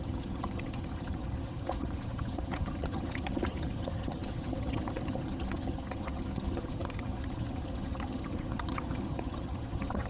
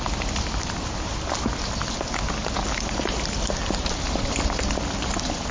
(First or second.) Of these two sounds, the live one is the second